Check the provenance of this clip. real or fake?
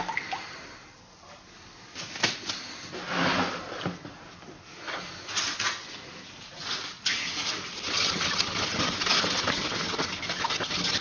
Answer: real